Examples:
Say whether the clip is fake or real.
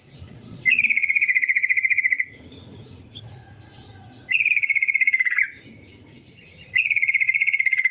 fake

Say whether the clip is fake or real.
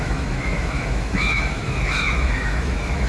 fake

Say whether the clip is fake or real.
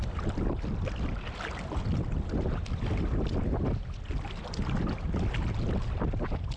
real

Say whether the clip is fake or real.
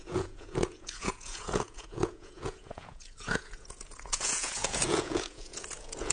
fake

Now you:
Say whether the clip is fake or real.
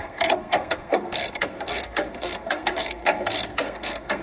fake